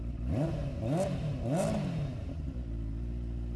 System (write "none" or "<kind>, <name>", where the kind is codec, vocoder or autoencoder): none